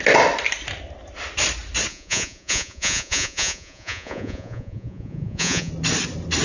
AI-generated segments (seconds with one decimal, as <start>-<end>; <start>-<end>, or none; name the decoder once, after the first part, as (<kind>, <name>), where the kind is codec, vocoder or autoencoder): 1.9-5.7 (vocoder, Vocos)